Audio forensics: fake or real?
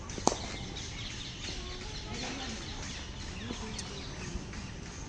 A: real